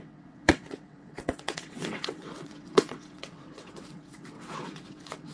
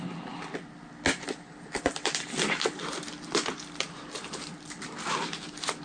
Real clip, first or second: second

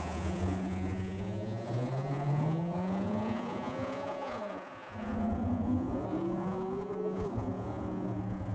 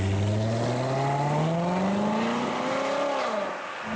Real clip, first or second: second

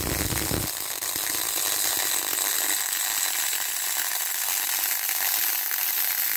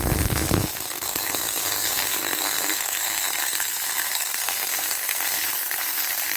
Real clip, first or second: first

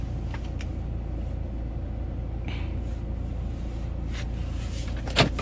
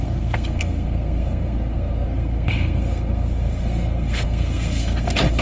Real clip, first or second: first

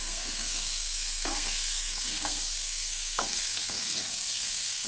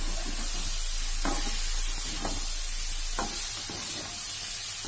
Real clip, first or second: second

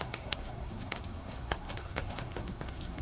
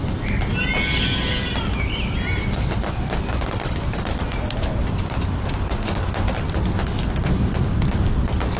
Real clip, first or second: second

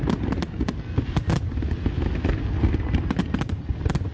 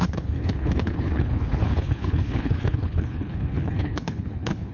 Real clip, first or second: first